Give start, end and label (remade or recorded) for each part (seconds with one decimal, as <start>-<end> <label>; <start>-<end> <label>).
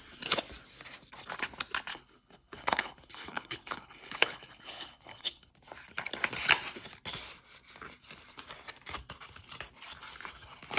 0.0-1.9 recorded; 1.9-5.5 remade; 5.5-10.8 recorded